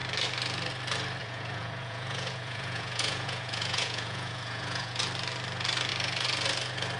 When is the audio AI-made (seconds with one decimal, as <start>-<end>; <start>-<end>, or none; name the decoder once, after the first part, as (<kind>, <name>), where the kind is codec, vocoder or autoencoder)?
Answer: 1.2-5.0 (vocoder, Vocos)